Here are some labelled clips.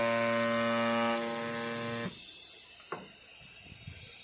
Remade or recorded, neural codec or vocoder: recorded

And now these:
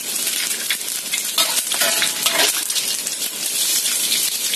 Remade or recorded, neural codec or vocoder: recorded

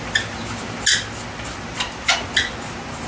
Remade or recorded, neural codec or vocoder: recorded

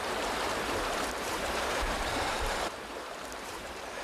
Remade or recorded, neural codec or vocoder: remade, vocoder, BigVGAN v2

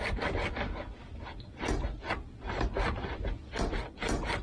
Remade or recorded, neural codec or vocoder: recorded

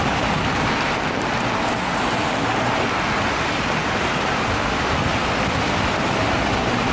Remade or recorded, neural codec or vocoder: recorded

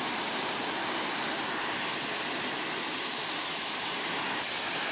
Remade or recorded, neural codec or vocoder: recorded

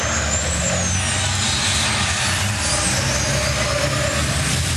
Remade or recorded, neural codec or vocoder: recorded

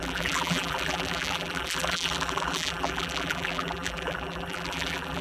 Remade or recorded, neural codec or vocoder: remade, vocoder, BigVGAN v2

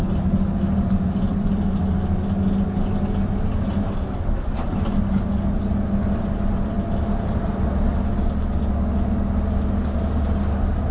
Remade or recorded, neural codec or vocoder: recorded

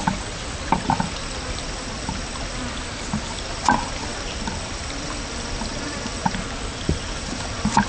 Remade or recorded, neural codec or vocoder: recorded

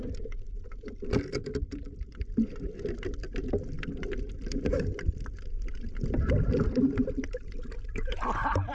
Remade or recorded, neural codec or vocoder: remade, vocoder, BigVGAN v2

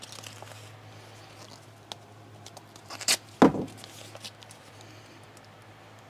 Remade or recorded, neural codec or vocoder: recorded